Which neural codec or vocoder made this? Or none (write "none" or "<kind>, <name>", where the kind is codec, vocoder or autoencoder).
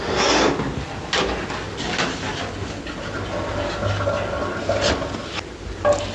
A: none